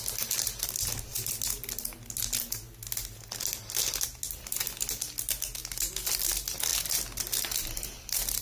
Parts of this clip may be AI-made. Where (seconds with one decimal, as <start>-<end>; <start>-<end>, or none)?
none